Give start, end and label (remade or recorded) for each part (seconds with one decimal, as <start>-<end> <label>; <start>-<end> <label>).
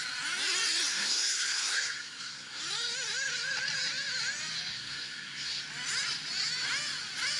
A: 0.0-0.9 recorded; 0.9-2.6 remade; 2.6-4.7 recorded; 4.7-5.6 remade; 5.6-7.4 recorded